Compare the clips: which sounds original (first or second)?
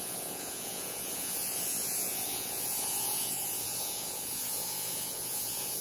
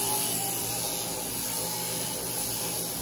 second